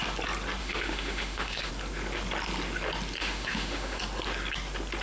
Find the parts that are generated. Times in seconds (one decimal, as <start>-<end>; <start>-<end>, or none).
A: 0.6-1.7; 3.2-4.0